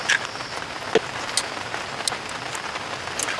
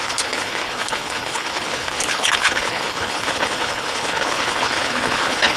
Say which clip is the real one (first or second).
first